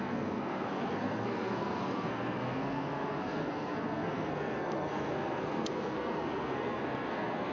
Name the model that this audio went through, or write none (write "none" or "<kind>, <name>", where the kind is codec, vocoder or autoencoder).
codec, SNAC